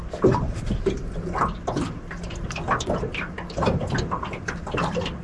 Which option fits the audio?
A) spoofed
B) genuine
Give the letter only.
A